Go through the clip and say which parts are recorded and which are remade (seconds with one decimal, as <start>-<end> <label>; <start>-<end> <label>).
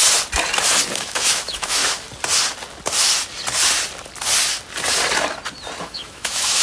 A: 0.0-0.9 recorded; 0.9-1.8 remade; 1.8-5.8 recorded; 5.8-6.6 remade